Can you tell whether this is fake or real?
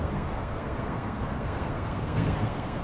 fake